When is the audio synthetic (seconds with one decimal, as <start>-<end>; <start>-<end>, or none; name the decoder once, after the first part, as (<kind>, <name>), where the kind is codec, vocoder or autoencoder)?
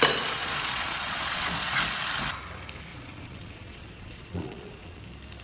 0.4-1.8 (vocoder, Vocos); 2.9-5.0